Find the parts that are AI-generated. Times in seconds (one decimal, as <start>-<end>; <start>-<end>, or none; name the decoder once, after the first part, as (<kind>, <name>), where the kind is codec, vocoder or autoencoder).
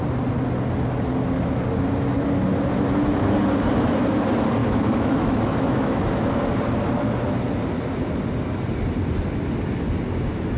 4.6-6.0 (autoencoder, DAC-VAE)